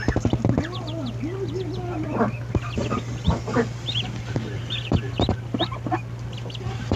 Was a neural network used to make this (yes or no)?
yes